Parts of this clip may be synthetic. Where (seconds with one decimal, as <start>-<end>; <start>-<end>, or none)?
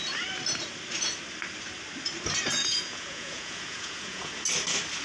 2.6-4.3